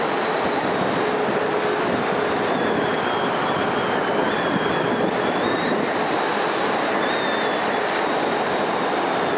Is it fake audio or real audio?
real